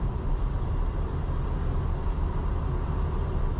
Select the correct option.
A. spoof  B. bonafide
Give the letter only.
B